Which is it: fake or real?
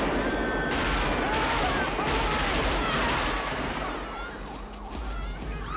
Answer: real